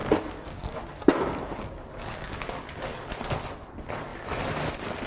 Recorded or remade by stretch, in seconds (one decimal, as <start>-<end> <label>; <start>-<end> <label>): 0.0-3.1 remade; 3.1-5.1 recorded